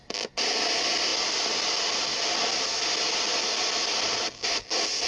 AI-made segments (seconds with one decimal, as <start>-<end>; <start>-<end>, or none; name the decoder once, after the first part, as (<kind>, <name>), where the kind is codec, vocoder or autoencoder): none